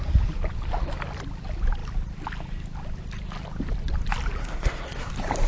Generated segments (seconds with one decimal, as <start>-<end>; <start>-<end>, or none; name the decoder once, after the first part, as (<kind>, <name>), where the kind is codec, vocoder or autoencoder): 4.4-5.1 (codec, SNAC)